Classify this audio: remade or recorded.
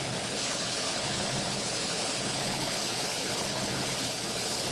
remade